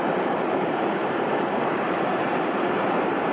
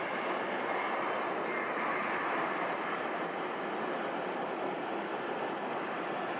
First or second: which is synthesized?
first